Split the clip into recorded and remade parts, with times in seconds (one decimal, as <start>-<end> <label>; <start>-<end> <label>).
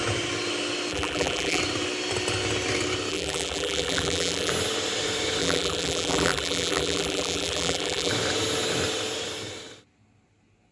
0.0-0.9 recorded; 0.9-1.6 remade; 1.6-3.1 recorded; 3.1-4.5 remade; 4.5-5.4 recorded; 5.4-8.1 remade; 8.1-10.7 recorded